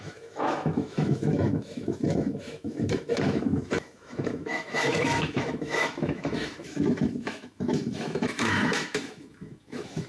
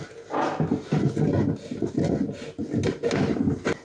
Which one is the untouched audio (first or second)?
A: second